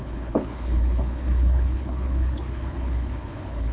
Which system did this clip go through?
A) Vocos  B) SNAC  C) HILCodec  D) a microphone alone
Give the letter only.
C